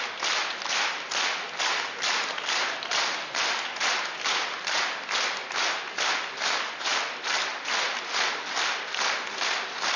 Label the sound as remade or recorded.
recorded